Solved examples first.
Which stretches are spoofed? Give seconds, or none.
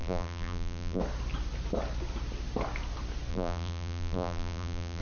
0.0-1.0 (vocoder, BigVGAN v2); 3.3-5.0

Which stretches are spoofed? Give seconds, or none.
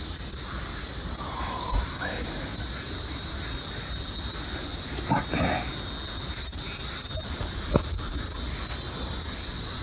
0.7-1.6 (vocoder, BigVGAN v2)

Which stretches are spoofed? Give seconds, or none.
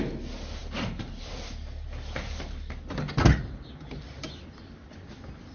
none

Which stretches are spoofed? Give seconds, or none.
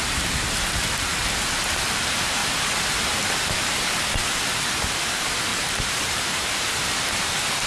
0.0-1.1 (vocoder, BigVGAN v2); 2.0-2.4; 4.5-7.7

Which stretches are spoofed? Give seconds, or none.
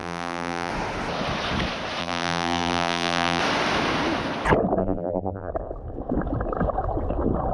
0.0-0.7 (vocoder, BigVGAN v2); 2.0-3.4; 4.8-5.5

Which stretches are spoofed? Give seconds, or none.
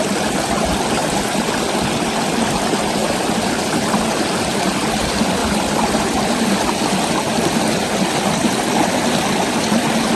1.0-1.5 (vocoder, BigVGAN v2); 3.0-4.5; 5.4-7.1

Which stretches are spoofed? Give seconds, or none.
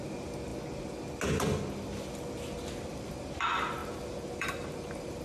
3.8-5.2 (vocoder, BigVGAN v2)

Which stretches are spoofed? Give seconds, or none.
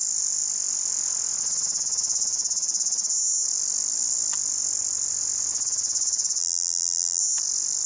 6.4-7.2 (vocoder, BigVGAN v2)